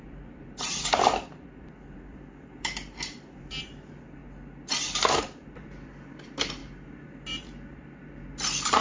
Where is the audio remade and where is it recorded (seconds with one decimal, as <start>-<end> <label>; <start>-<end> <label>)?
0.0-4.2 remade; 4.2-5.2 recorded; 5.2-8.8 remade